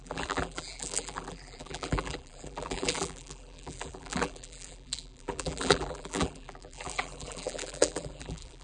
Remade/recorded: remade